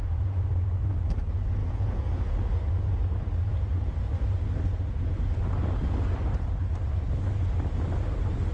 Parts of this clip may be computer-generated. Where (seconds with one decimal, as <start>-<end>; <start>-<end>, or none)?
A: 1.6-2.3